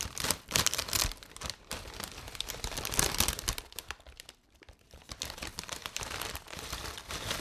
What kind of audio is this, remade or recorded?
remade